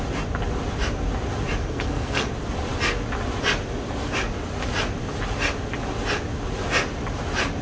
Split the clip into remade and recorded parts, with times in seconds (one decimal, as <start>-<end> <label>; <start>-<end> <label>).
0.0-1.6 recorded; 1.6-2.3 remade; 2.3-7.6 recorded